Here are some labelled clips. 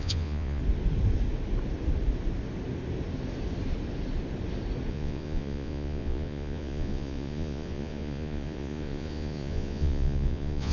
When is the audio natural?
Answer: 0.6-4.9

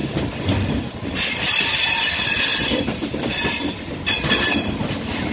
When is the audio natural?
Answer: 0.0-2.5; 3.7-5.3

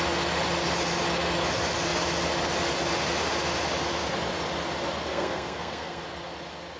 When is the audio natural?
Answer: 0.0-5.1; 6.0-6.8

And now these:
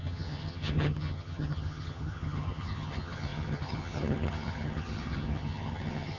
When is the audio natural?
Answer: none

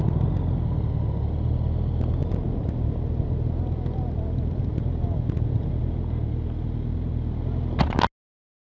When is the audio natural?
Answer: 0.0-2.2; 5.7-8.6